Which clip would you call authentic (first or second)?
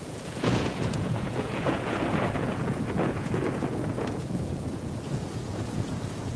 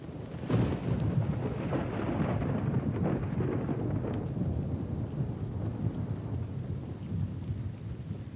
second